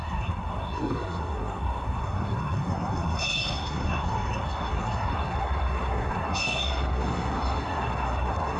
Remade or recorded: remade